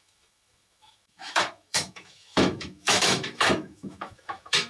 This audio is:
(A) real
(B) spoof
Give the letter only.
B